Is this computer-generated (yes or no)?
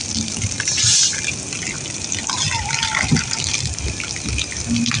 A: no